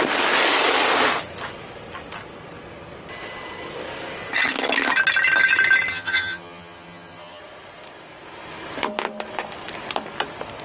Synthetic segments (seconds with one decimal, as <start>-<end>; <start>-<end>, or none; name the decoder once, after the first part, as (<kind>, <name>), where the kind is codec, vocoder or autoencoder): 5.9-7.4 (vocoder, HiFi-GAN)